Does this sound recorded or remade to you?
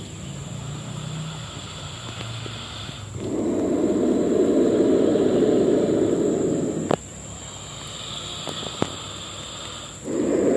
recorded